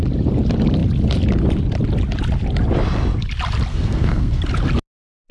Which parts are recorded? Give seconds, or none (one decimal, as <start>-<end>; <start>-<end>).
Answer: 0.0-3.7; 4.4-5.3